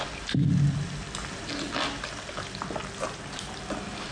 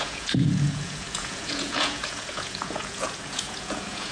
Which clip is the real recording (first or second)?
first